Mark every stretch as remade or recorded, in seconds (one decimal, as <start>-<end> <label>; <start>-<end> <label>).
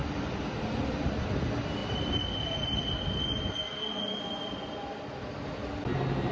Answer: 0.0-0.6 remade; 0.6-1.8 recorded; 1.8-3.5 remade; 3.5-6.3 recorded